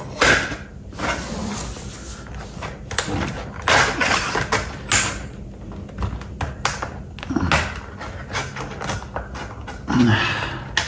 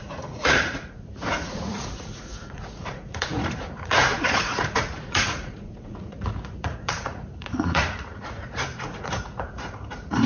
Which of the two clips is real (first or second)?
first